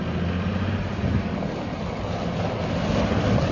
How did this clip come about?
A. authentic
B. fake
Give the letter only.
A